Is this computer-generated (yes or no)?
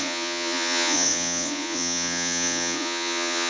yes